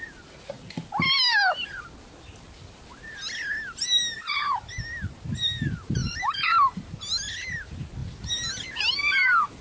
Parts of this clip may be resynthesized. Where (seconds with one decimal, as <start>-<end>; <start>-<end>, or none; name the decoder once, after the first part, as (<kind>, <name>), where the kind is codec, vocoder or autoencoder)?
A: 6.0-7.1 (vocoder, BigVGAN v2)